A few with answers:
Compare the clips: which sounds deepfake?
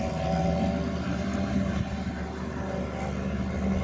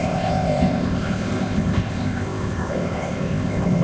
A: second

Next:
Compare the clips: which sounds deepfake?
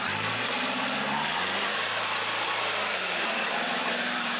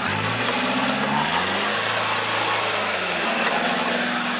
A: first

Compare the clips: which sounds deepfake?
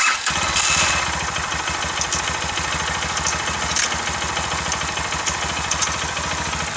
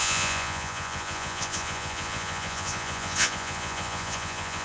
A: second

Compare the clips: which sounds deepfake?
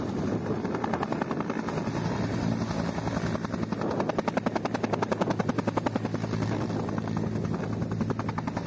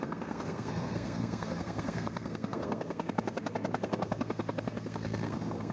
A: second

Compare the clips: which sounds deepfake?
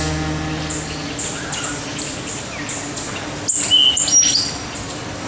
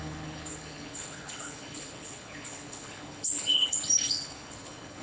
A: second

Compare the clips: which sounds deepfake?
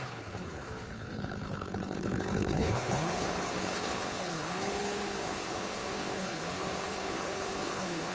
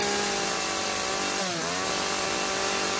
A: first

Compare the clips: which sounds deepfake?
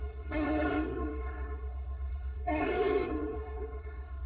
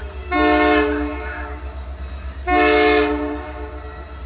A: first